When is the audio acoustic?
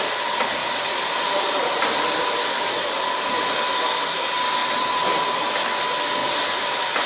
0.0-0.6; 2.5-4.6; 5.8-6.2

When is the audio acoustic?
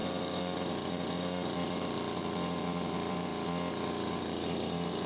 3.3-4.2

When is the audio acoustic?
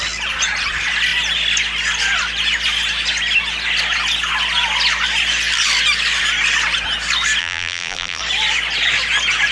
0.0-7.4; 8.2-9.5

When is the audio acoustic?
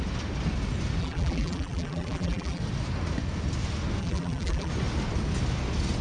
0.0-1.0; 2.6-4.0; 4.7-6.0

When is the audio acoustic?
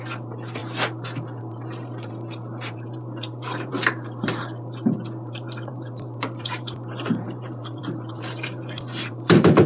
0.6-1.4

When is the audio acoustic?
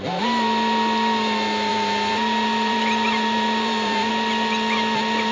0.0-1.7; 4.1-5.3